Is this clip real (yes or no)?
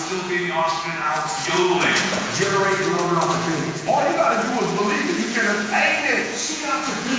no